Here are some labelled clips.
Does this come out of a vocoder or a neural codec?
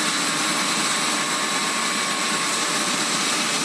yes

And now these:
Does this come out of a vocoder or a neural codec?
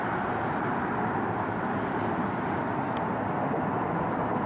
no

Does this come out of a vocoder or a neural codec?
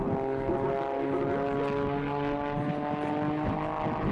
no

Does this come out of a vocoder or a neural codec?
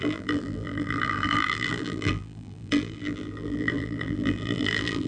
yes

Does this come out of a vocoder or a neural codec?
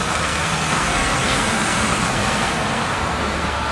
yes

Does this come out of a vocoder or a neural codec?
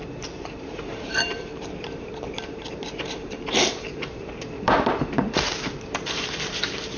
yes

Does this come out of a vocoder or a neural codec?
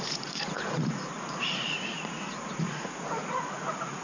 yes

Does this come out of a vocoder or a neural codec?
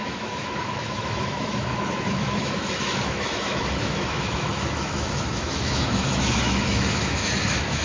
yes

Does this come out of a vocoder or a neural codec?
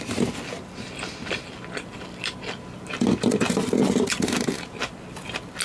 no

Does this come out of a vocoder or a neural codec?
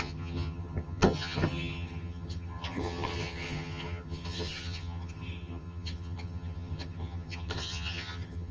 yes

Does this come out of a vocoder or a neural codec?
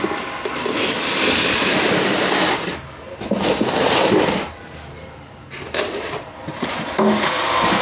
yes